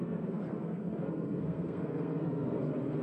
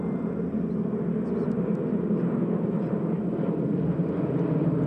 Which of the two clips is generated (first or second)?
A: first